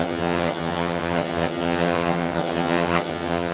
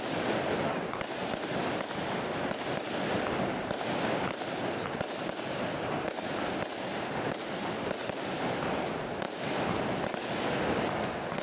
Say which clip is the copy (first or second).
first